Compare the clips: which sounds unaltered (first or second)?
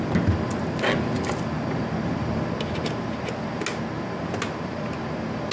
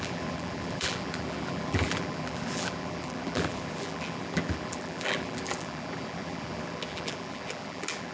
first